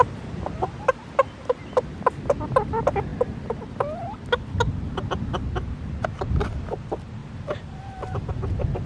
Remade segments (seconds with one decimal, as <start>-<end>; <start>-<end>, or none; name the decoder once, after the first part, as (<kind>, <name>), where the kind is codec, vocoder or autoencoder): 7.2-8.3 (vocoder, BigVGAN v2)